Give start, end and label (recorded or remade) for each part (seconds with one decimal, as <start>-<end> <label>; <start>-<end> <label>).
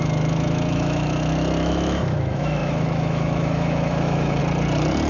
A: 0.0-4.4 remade; 4.4-5.1 recorded